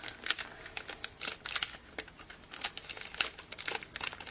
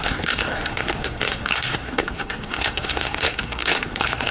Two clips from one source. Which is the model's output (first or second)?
second